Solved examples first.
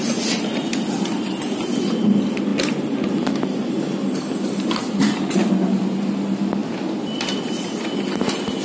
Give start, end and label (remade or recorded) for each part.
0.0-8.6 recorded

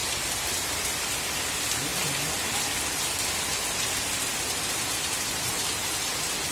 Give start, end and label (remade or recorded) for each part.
0.0-1.5 remade; 1.5-6.5 recorded

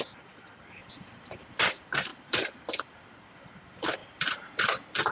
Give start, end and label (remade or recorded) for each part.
0.0-0.8 recorded; 0.8-1.6 remade; 1.6-2.1 recorded; 2.1-3.2 remade; 3.2-4.0 recorded; 4.0-5.1 remade

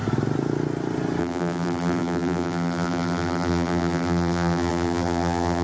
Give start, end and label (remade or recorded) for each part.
0.0-1.2 recorded; 1.2-5.6 remade

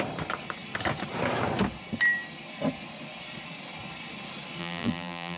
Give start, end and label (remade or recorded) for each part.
0.0-4.6 recorded; 4.6-5.4 remade

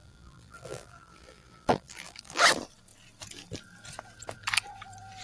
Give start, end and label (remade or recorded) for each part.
0.0-2.4 remade; 2.4-5.2 recorded

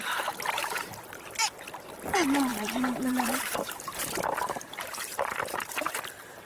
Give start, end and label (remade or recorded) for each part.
0.0-2.5 recorded; 2.5-6.0 remade; 6.0-6.5 recorded